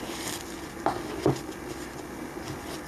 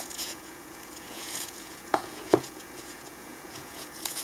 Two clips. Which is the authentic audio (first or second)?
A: first